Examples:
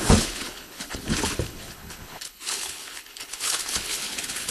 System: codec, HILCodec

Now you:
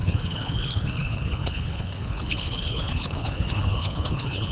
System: codec, HILCodec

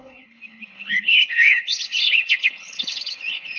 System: codec, HILCodec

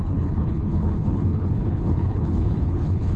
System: codec, HILCodec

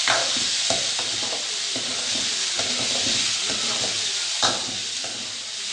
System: none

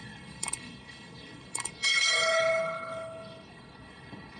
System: codec, HILCodec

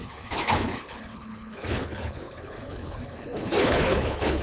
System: codec, HILCodec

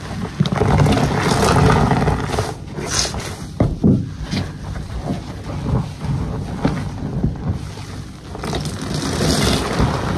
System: none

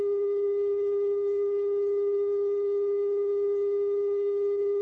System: codec, HILCodec